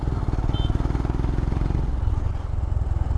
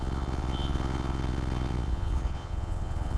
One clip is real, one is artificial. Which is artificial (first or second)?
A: second